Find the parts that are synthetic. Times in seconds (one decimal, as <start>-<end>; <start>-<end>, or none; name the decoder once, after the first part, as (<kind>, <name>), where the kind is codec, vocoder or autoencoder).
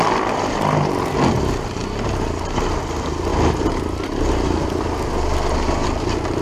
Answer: none